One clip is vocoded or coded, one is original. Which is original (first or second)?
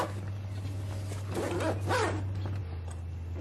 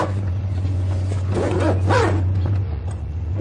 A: first